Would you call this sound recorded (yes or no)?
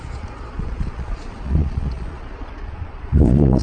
no